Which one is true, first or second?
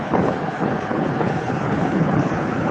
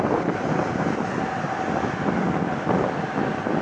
second